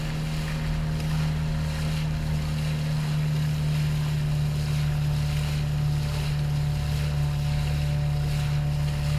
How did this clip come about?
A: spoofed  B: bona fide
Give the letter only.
B